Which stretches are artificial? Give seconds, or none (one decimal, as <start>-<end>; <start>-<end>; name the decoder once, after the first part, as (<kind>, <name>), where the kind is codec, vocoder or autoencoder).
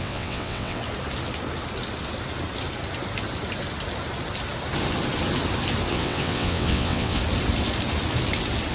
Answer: 0.0-0.8 (vocoder, WaveNeXt); 5.9-7.2